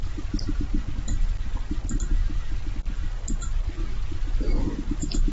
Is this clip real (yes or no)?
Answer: yes